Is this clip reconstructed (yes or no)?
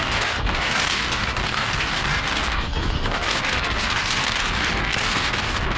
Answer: yes